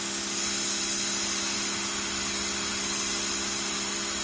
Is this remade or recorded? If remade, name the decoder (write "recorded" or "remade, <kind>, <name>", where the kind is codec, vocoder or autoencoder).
recorded